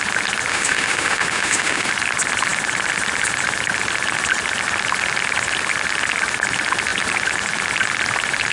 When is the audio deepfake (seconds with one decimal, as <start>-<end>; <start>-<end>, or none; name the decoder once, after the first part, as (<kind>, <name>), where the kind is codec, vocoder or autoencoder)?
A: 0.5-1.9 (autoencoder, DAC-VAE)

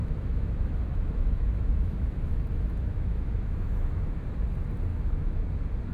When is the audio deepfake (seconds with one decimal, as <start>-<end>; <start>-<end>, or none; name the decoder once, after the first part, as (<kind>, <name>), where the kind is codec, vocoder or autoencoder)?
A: 0.0-2.4 (autoencoder, DAC-VAE); 2.9-4.2; 4.9-5.5

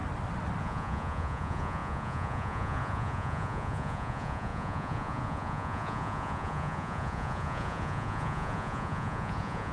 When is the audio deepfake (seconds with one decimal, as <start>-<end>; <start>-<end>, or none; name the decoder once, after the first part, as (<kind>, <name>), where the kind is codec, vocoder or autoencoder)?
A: 0.6-9.7 (vocoder, Vocos)

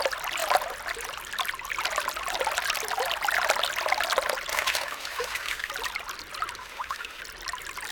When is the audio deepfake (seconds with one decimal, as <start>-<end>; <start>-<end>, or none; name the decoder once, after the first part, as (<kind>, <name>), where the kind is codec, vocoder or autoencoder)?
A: 4.5-5.7 (autoencoder, DAC-VAE); 6.6-7.2

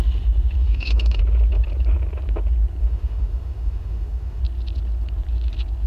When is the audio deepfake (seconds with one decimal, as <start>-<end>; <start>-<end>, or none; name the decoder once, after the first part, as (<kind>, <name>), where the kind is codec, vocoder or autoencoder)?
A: 0.6-1.2 (autoencoder, DAC-VAE); 2.8-4.4

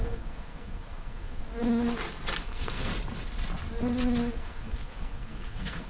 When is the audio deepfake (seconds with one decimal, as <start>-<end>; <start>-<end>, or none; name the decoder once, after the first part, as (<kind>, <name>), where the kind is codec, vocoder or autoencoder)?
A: 0.0-1.4 (codec, SNAC); 2.4-2.9; 4.3-5.9

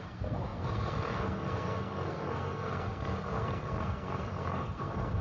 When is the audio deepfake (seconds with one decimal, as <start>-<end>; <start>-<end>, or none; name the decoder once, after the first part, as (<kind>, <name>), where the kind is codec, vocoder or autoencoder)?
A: 0.0-5.2 (codec, SNAC)